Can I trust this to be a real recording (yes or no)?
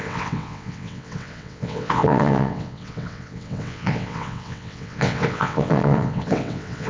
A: no